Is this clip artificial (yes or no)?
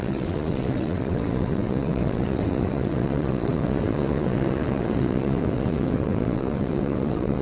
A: yes